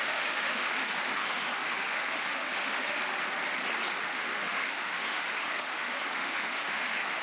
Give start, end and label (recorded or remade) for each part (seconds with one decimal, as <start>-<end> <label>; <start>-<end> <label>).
0.0-3.0 remade; 3.0-4.0 recorded; 4.0-7.2 remade